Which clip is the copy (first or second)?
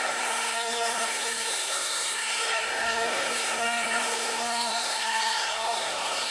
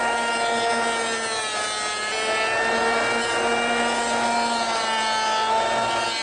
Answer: first